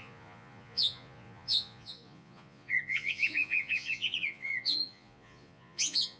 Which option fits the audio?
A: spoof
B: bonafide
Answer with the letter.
A